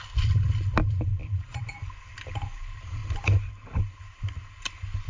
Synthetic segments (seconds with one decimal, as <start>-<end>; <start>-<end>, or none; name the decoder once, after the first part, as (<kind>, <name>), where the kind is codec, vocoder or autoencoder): none